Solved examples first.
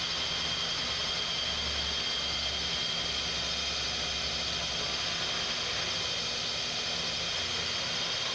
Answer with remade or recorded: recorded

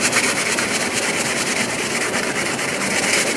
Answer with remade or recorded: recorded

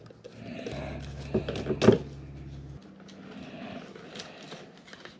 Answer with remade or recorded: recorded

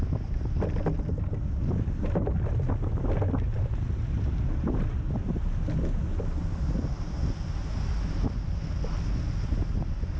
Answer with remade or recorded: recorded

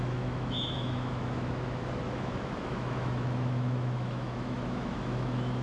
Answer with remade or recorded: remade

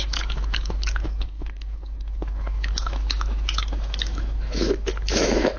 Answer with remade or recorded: remade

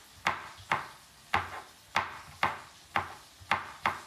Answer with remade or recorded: recorded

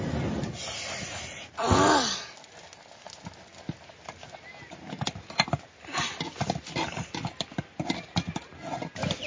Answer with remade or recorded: recorded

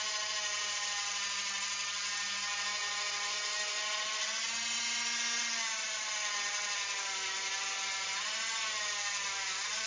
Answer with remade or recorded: recorded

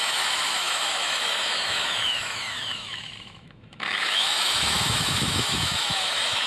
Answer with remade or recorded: remade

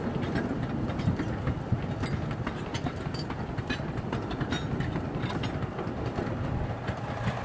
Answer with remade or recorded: recorded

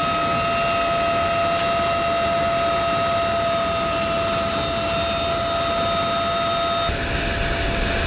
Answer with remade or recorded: recorded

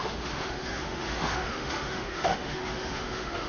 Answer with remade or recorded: remade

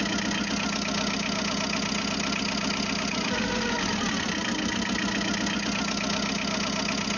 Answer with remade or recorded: recorded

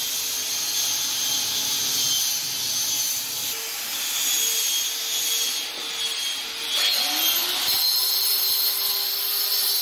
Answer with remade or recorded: recorded